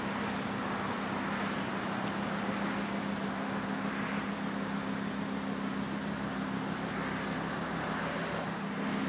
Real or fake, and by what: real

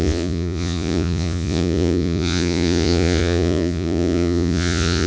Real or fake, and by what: fake, vocoder, Vocos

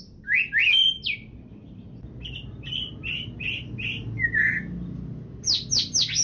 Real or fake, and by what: real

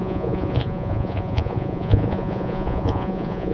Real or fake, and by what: fake, vocoder, Vocos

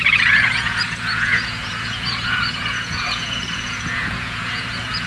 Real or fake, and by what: fake, vocoder, Vocos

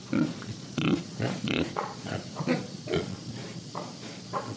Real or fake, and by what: fake, vocoder, Vocos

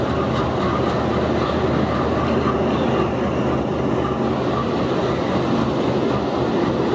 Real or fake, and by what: real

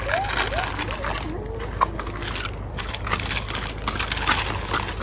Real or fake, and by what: real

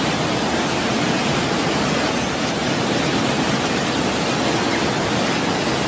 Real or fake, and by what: real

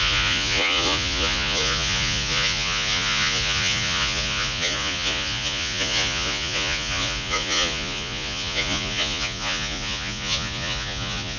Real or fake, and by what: fake, vocoder, Vocos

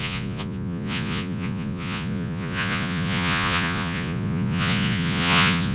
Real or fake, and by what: fake, vocoder, Vocos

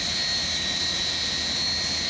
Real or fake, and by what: real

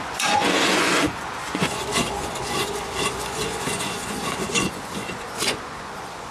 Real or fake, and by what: fake, vocoder, Vocos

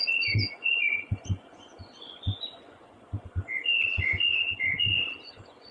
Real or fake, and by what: fake, vocoder, Vocos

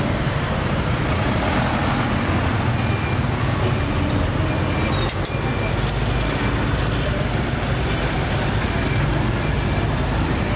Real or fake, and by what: real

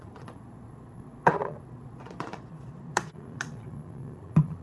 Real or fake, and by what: fake, vocoder, Vocos